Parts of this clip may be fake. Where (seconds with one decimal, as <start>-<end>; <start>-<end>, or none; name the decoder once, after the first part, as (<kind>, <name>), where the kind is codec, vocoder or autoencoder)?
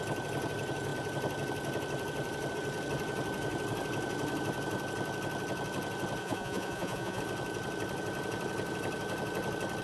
6.2-7.2 (vocoder, Vocos)